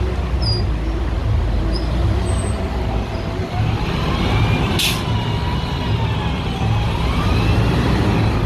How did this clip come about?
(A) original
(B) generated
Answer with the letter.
A